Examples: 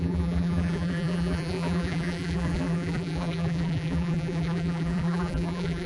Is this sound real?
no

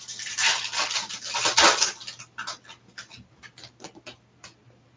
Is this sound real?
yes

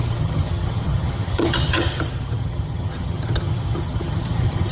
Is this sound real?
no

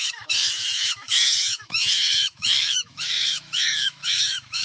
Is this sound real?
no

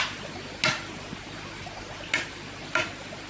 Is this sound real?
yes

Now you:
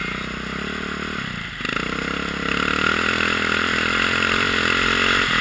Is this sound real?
yes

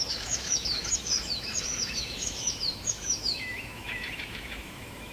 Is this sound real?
no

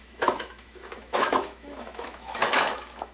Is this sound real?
no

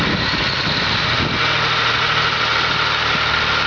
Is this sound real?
yes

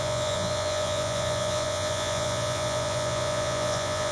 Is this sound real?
no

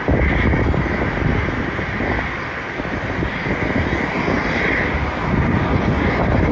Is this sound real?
yes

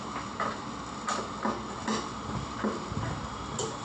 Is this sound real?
yes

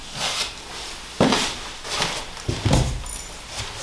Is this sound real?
yes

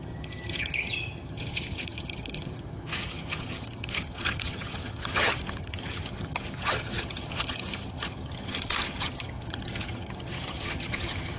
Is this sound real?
no